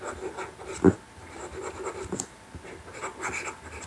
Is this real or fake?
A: real